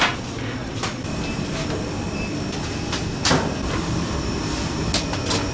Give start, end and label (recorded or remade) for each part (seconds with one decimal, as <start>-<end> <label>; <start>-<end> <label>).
0.0-0.6 recorded; 0.6-3.9 remade; 3.9-5.5 recorded